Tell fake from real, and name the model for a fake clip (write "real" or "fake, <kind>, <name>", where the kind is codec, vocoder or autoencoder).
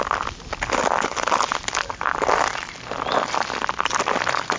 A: real